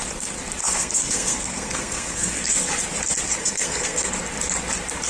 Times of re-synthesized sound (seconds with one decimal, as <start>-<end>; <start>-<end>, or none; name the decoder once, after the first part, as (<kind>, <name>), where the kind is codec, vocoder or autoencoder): 0.6-2.7 (codec, SNAC); 3.4-4.1